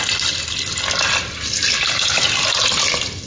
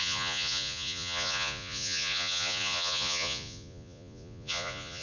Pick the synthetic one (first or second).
second